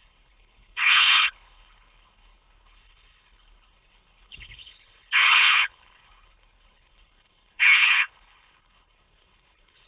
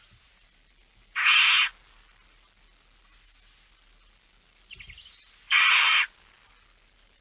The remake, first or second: first